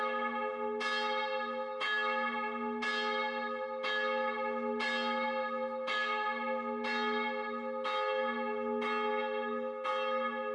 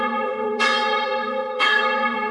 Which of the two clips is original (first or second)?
first